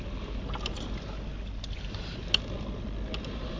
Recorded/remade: recorded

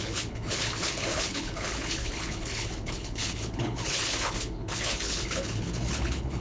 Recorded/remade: remade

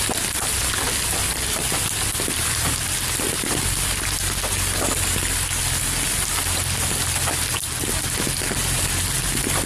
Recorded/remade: recorded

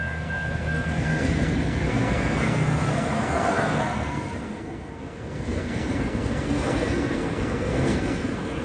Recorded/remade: remade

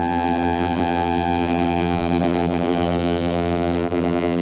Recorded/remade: remade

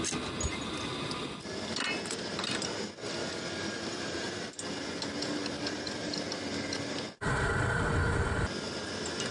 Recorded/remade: recorded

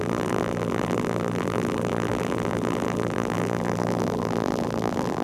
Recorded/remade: remade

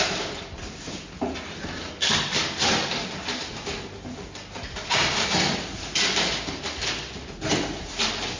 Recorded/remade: recorded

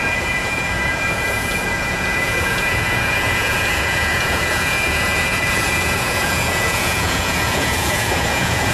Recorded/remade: remade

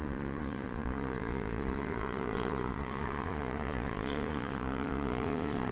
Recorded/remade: remade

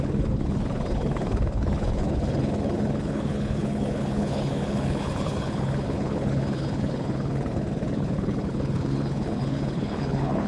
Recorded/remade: remade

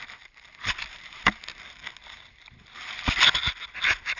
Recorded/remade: recorded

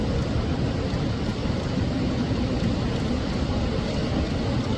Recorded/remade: recorded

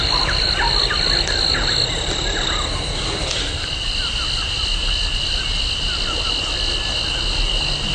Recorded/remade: recorded